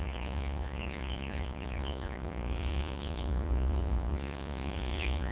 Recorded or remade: remade